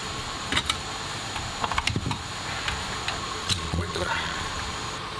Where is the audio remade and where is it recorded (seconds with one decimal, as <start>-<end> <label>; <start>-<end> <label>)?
0.0-3.4 recorded; 3.4-4.5 remade; 4.5-5.2 recorded